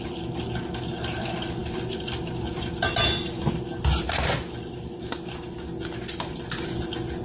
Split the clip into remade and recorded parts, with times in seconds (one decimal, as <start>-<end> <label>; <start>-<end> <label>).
0.0-7.2 recorded

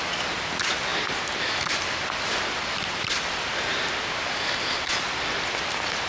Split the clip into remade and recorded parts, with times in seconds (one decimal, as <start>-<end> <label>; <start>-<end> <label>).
0.0-6.1 recorded

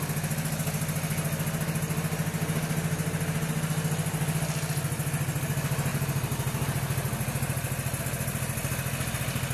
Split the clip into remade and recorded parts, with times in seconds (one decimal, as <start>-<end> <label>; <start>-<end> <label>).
0.0-9.5 recorded

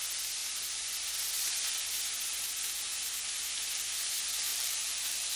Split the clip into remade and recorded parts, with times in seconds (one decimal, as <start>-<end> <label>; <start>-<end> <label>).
0.0-4.5 recorded; 4.5-5.4 remade

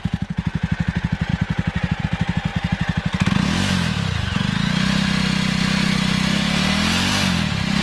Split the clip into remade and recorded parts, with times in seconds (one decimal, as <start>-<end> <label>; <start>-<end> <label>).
0.0-7.8 recorded